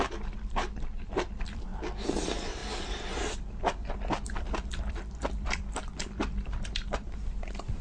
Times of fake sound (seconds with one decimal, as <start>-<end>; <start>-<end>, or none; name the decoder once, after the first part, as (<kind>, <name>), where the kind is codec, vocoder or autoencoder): 0.0-1.7 (vocoder, BigVGAN v2); 2.2-7.8